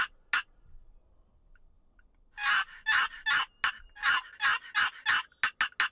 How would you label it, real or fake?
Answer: real